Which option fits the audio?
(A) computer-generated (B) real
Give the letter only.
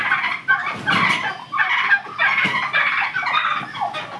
B